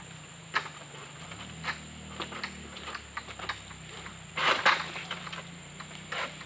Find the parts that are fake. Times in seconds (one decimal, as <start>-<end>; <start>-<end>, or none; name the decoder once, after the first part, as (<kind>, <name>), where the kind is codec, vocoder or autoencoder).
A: none